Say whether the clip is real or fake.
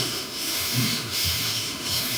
fake